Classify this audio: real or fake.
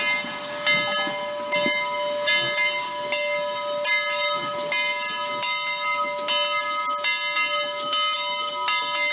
real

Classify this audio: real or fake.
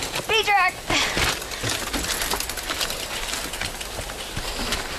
real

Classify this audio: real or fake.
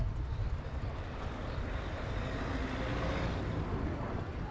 real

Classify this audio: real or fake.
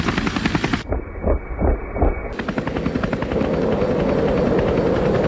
real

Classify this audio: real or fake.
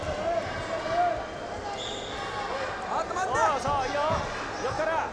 real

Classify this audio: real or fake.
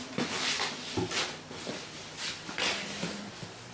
real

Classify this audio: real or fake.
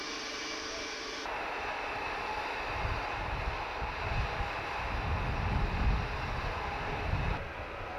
real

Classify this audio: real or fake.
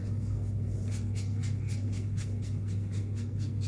fake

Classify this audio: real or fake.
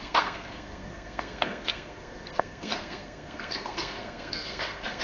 fake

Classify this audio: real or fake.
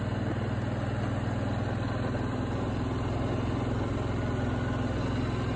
real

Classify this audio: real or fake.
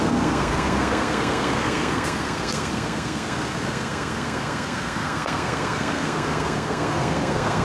fake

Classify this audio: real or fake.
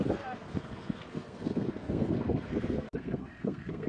fake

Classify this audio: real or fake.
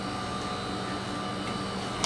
real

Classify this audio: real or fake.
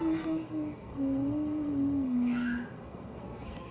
fake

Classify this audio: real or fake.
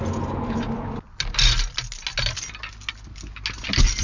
real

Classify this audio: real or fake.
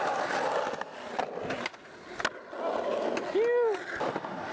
real